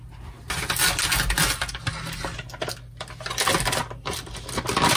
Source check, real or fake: real